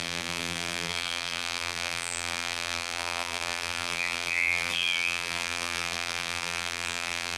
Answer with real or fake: fake